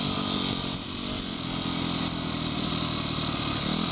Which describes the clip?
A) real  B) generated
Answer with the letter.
A